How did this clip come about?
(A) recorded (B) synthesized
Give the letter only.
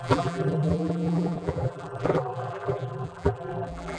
B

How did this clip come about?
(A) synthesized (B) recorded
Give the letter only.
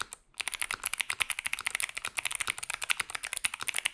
B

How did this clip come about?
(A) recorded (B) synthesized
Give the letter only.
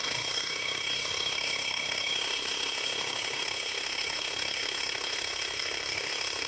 B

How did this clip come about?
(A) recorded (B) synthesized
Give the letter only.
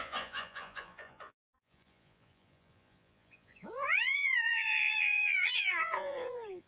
B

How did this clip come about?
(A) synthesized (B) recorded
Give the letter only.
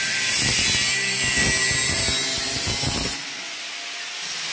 B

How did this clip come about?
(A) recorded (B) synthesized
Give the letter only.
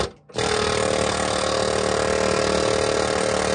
A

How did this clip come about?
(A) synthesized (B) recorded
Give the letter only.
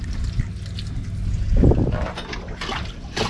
B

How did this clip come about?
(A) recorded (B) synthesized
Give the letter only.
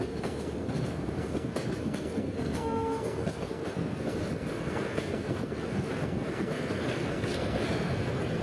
B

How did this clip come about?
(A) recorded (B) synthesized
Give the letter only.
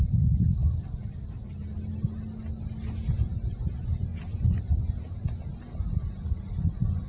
A